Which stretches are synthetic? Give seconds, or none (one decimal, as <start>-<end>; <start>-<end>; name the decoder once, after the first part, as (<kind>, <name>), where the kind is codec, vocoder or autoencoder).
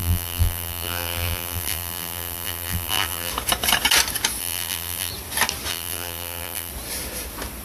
0.0-3.3 (vocoder, BigVGAN v2); 4.4-5.1; 5.7-6.7